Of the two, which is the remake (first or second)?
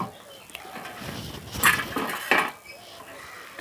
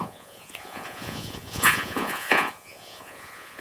second